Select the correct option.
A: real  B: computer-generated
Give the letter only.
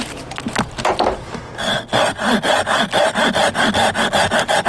A